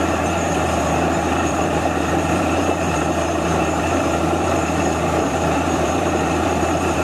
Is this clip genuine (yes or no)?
no